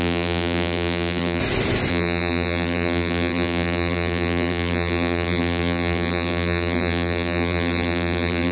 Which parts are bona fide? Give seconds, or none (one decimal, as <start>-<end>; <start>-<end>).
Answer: 1.4-1.9